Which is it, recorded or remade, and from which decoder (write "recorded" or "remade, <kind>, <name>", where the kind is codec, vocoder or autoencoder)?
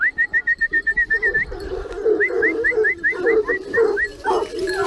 remade, vocoder, BigVGAN v2